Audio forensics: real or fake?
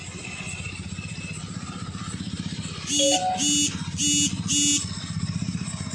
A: real